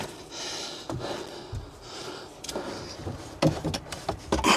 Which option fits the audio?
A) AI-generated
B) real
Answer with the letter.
B